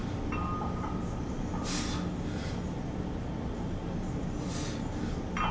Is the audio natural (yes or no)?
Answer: yes